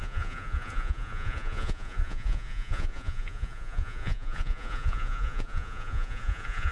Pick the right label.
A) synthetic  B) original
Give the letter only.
A